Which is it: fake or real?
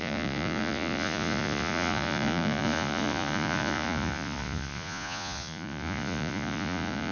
fake